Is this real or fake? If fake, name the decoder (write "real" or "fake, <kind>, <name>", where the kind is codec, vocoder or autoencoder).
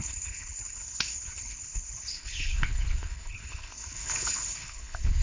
fake, codec, HILCodec